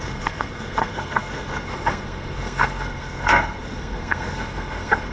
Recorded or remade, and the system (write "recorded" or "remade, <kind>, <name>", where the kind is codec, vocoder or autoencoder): remade, codec, SNAC